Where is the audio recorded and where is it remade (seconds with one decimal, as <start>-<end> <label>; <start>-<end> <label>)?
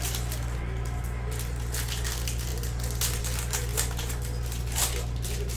0.0-5.6 recorded